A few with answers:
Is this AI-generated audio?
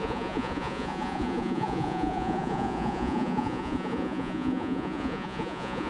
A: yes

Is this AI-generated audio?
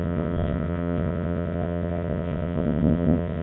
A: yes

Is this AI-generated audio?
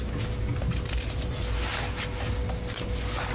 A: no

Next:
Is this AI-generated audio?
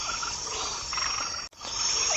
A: no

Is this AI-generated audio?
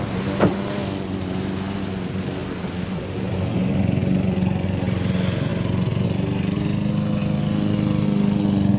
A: no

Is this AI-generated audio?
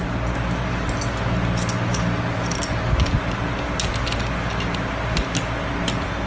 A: no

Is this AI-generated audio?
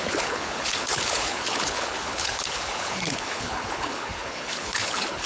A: yes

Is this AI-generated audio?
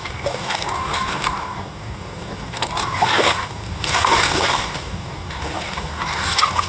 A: yes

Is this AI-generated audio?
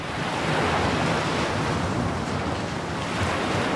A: no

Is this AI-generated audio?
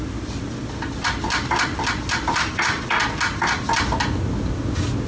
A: no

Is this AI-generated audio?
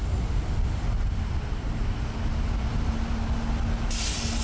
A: no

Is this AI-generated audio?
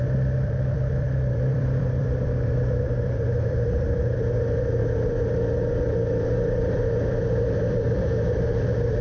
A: yes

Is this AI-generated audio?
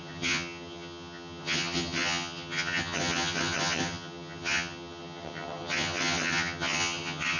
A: yes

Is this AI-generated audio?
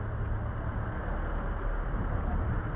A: no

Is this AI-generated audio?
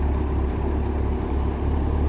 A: yes